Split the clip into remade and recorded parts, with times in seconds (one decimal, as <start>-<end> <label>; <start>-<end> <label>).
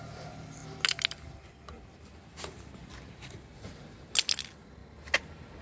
0.0-5.6 recorded